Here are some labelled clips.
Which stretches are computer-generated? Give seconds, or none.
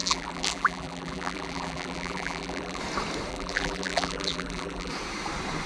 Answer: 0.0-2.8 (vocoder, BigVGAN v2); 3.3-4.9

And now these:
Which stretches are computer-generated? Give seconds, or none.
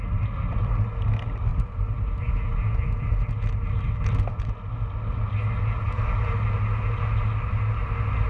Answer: 1.5-2.3 (vocoder, BigVGAN v2)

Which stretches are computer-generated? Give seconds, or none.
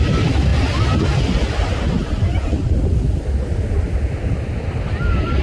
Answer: none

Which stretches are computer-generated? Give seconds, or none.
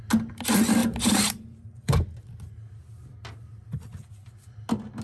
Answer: 0.8-2.3 (vocoder, BigVGAN v2)